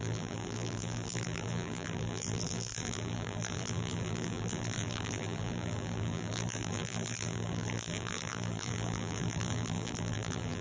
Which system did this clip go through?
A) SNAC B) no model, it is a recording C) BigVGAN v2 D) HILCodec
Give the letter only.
C